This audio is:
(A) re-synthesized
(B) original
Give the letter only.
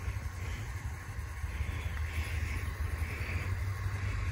B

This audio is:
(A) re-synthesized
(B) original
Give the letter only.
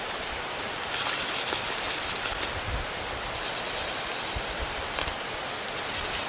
B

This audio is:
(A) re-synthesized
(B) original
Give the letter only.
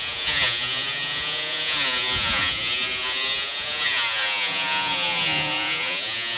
A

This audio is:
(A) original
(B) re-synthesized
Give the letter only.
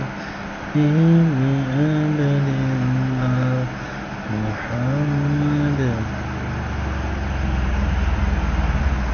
A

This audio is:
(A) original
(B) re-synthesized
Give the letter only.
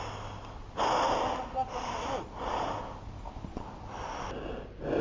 A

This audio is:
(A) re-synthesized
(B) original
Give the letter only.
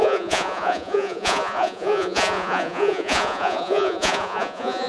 A